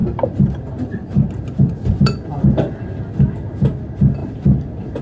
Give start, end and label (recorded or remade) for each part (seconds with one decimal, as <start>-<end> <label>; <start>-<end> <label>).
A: 0.0-5.0 recorded